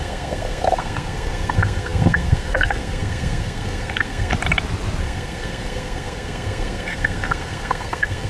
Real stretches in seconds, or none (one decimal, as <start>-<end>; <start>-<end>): 4.3-5.0